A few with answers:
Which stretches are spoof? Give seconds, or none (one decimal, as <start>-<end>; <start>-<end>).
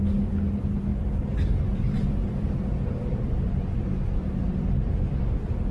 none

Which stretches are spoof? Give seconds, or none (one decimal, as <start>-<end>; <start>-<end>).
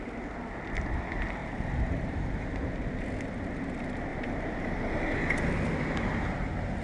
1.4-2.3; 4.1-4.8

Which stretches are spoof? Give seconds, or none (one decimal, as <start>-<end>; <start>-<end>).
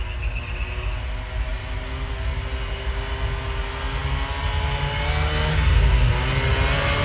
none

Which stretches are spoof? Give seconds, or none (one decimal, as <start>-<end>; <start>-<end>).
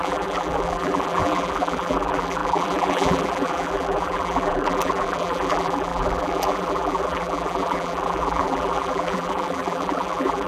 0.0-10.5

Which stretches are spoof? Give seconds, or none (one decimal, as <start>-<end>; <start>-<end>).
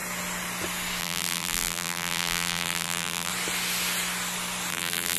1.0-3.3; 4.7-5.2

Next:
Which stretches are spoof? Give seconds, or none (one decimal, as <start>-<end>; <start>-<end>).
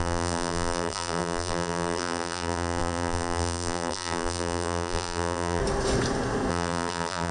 0.0-5.6; 6.5-7.3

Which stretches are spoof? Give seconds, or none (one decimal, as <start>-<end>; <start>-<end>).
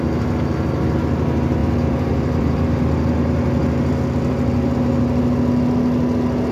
1.6-2.8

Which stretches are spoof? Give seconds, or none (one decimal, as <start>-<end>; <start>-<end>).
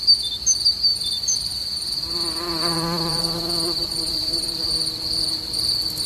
0.9-4.6